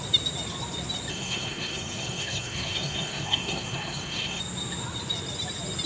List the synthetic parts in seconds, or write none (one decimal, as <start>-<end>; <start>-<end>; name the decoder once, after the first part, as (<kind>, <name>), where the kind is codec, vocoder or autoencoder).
1.1-4.4 (codec, SNAC)